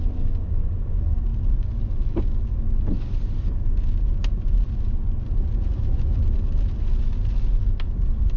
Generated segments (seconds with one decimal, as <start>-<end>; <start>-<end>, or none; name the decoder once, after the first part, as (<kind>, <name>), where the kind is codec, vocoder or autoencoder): none